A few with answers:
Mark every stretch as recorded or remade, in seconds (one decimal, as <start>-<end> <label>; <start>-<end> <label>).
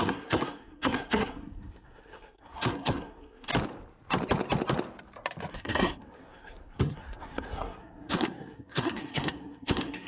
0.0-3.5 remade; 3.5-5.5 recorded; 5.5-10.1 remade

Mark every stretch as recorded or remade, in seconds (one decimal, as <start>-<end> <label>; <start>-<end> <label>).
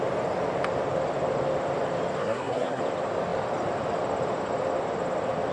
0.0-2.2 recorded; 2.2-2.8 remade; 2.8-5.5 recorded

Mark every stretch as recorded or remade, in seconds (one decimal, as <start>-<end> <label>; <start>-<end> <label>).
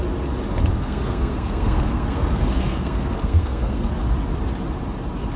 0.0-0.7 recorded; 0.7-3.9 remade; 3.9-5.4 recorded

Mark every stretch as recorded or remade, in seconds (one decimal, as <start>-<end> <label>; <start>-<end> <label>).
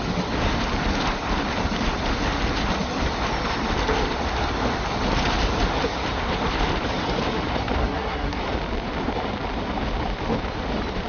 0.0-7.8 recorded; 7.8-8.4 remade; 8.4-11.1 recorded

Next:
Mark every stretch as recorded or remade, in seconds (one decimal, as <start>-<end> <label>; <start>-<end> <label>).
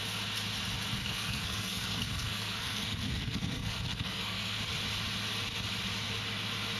0.0-1.0 recorded; 1.0-4.6 remade; 4.6-6.8 recorded